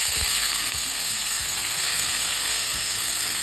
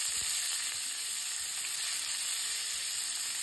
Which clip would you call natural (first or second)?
second